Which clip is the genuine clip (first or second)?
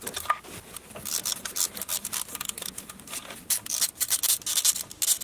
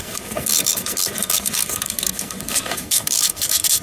first